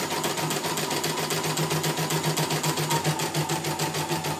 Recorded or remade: recorded